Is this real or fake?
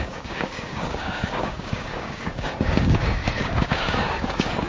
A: fake